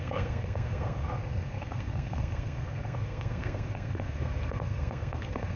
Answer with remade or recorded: remade